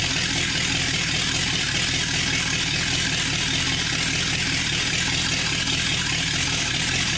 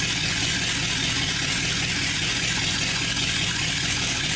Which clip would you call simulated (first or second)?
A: second